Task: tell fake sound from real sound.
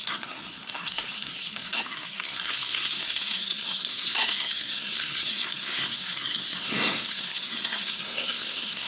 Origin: fake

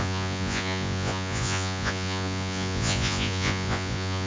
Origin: fake